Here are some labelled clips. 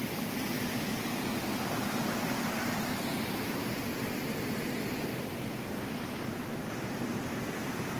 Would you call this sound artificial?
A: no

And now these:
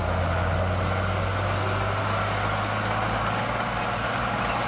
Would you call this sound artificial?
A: no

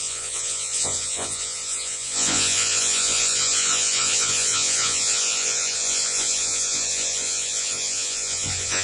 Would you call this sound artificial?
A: yes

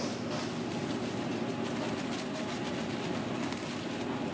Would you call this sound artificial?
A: no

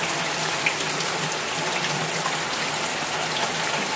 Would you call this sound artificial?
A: no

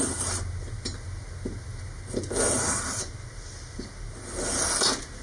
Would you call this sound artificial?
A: no